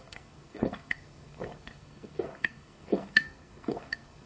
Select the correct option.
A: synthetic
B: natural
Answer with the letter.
A